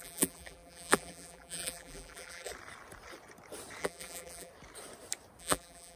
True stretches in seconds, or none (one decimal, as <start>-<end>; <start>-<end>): 2.5-3.8; 4.5-5.4

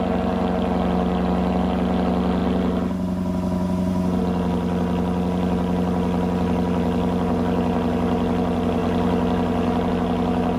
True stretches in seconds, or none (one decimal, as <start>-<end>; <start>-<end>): 0.0-10.6

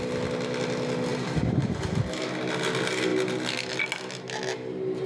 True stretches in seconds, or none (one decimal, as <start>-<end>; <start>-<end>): 0.0-1.1; 2.0-5.1